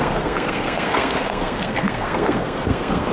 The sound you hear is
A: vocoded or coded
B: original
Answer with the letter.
A